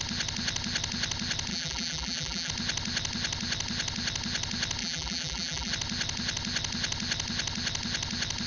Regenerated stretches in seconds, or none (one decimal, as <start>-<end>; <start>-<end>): 1.5-2.5; 4.8-5.7